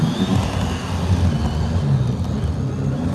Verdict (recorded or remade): recorded